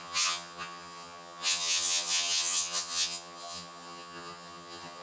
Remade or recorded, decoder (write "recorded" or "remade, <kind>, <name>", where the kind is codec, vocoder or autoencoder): remade, vocoder, HiFi-GAN